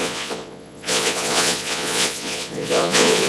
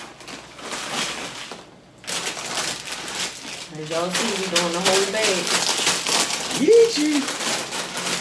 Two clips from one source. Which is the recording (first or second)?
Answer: second